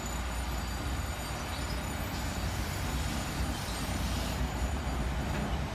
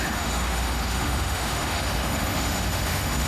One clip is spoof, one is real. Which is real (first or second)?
first